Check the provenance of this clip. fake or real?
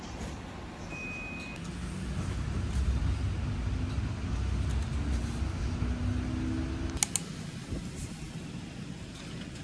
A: real